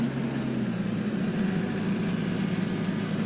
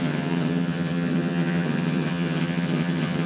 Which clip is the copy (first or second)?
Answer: second